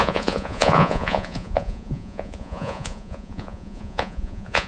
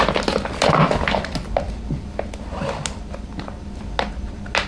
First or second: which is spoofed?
first